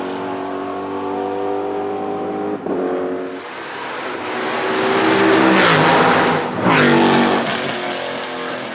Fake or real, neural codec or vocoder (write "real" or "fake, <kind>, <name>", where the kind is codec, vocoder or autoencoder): real